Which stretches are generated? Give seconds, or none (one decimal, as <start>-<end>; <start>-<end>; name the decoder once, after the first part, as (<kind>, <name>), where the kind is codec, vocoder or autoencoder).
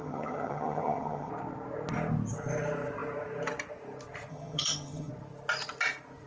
0.0-1.3 (vocoder, HiFi-GAN); 4.3-5.1